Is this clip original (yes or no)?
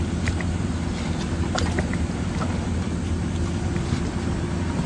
yes